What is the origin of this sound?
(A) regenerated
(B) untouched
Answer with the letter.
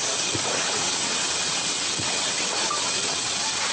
A